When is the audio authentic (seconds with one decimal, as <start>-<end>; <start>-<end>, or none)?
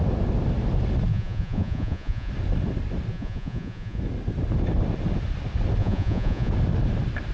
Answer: 0.0-1.1; 2.3-3.1; 4.0-5.8; 6.5-7.3